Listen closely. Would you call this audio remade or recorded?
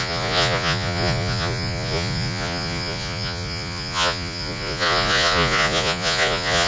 remade